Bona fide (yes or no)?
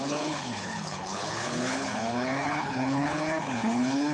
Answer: no